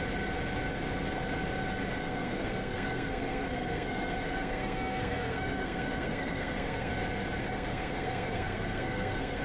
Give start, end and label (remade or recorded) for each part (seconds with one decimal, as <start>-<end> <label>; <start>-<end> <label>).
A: 0.0-2.0 recorded; 2.0-6.9 remade; 6.9-7.4 recorded; 7.4-9.4 remade

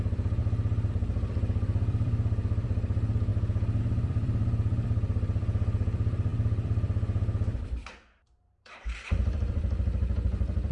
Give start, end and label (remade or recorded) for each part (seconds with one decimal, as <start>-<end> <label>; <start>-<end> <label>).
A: 0.0-0.4 remade; 0.4-0.9 recorded; 0.9-3.3 remade; 3.3-3.8 recorded; 3.8-10.7 remade

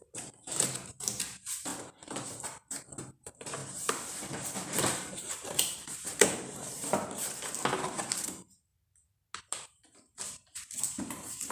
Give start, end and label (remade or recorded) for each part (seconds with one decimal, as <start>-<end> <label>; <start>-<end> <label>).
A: 0.0-1.7 remade; 1.7-2.8 recorded; 2.8-3.6 remade; 3.6-4.7 recorded; 4.7-8.7 remade; 8.7-9.4 recorded; 9.4-11.5 remade

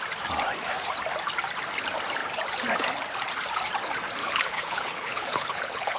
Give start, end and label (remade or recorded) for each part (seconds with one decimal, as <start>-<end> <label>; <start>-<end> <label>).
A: 0.0-4.2 recorded; 4.2-6.0 remade